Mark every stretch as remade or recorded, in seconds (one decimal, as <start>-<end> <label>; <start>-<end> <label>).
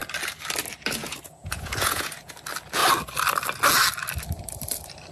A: 0.0-1.0 recorded; 1.0-2.3 remade; 2.3-5.1 recorded